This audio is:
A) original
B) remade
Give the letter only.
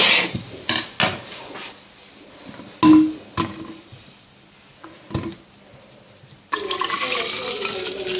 A